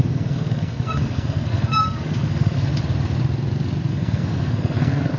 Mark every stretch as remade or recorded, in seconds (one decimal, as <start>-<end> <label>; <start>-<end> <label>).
0.0-2.7 remade; 2.7-3.9 recorded; 3.9-5.2 remade